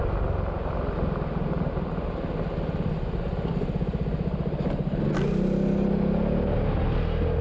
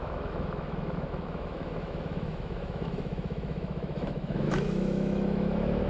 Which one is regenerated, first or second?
second